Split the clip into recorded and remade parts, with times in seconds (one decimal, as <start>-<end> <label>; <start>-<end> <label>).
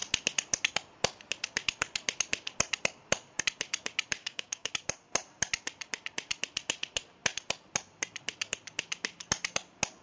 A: 0.0-4.2 recorded; 4.2-4.7 remade; 4.7-10.0 recorded